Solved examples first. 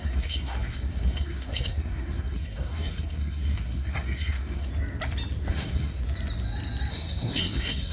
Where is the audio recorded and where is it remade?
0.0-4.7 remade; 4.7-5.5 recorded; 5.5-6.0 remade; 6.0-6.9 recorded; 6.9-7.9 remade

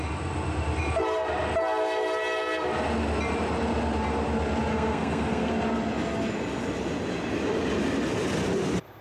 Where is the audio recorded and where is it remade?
0.0-4.7 recorded; 4.7-5.5 remade; 5.5-9.0 recorded

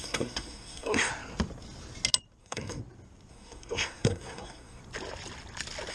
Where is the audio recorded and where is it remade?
0.0-1.1 remade; 1.1-2.4 recorded; 2.4-2.8 remade; 2.8-3.3 recorded; 3.3-4.8 remade; 4.8-5.9 recorded

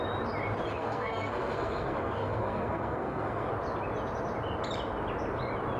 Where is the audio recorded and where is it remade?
0.0-0.7 recorded; 0.7-3.5 remade; 3.5-5.8 recorded

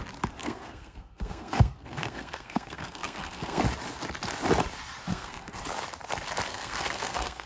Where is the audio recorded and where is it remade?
0.0-0.4 recorded; 0.4-3.6 remade; 3.6-5.1 recorded; 5.1-5.6 remade; 5.6-6.5 recorded; 6.5-7.5 remade